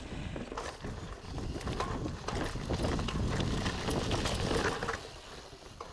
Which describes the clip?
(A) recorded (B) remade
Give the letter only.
A